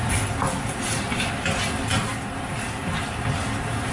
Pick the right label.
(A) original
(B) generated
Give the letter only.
A